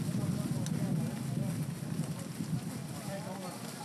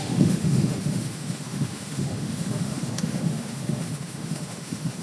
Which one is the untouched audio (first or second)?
first